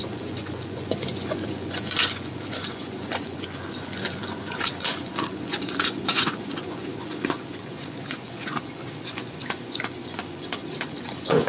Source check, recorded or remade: remade